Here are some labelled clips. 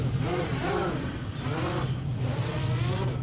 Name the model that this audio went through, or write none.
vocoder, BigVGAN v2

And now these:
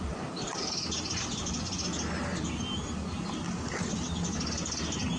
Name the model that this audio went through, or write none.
none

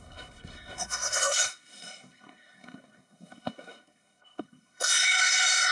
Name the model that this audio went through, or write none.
codec, SNAC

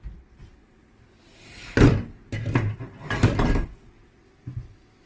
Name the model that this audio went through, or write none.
none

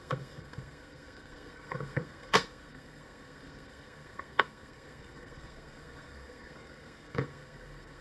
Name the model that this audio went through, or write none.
codec, SNAC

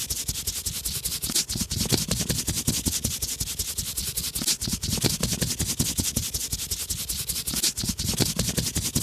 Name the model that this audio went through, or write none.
none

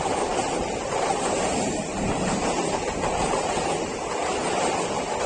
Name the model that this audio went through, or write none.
none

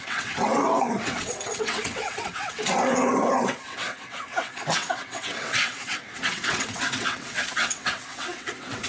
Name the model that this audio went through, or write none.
vocoder, WaveNeXt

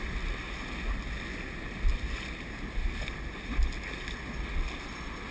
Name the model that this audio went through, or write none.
none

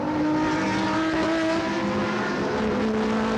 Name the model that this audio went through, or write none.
none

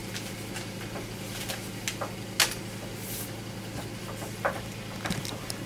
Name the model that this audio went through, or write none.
none